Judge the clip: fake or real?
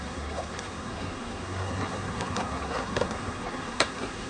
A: fake